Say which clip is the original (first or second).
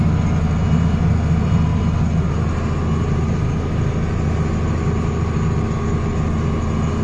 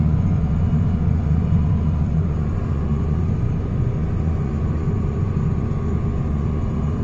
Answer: first